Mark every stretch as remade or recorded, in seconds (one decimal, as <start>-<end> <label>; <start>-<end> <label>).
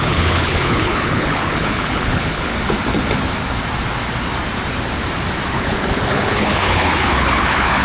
0.0-2.5 remade; 2.5-5.5 recorded; 5.5-7.8 remade